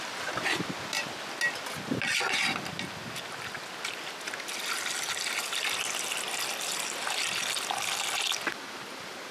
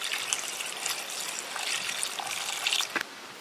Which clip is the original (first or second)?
first